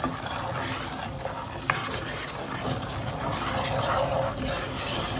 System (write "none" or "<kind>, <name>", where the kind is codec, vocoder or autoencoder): none